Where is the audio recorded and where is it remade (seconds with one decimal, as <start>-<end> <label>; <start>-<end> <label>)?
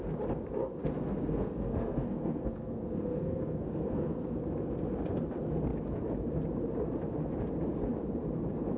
0.0-0.8 recorded; 0.8-4.4 remade; 4.4-8.8 recorded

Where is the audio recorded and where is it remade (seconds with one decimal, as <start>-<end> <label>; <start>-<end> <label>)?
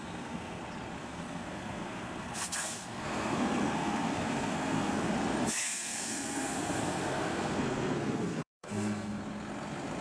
0.0-0.6 remade; 0.6-1.0 recorded; 1.0-5.1 remade; 5.1-5.6 recorded; 5.6-9.2 remade; 9.2-10.0 recorded